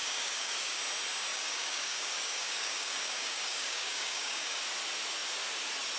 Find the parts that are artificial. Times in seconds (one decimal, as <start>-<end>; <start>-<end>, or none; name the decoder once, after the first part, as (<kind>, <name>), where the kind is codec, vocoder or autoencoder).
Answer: 0.0-0.8 (codec, DAC); 1.3-4.6